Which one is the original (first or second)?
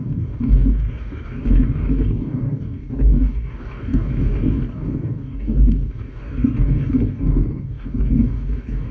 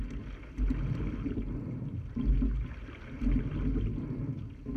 second